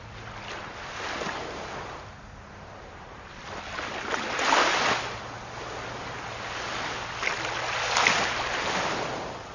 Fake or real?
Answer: real